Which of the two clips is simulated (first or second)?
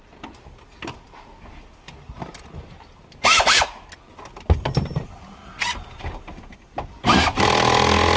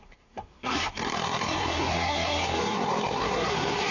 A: second